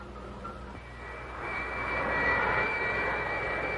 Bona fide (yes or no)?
no